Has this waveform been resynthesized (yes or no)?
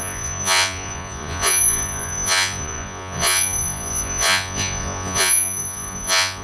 yes